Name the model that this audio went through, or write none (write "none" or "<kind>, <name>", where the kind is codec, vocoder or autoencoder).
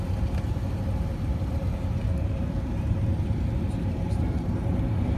vocoder, BigVGAN v2